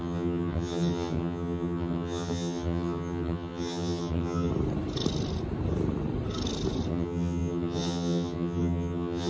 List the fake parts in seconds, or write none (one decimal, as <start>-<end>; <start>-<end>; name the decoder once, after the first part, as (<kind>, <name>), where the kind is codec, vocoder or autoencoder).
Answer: 0.0-4.5 (vocoder, HiFi-GAN); 6.9-9.3